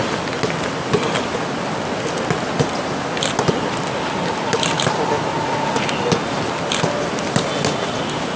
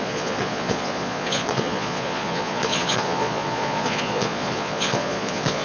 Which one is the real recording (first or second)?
first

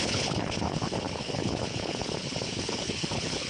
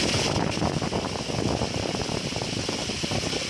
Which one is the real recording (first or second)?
second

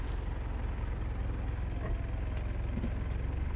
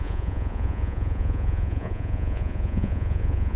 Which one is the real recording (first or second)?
first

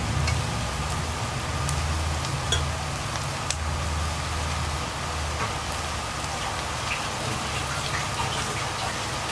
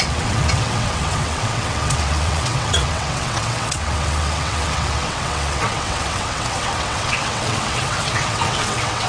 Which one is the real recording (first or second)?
first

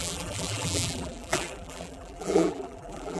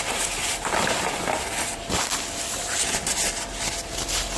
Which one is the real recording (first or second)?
second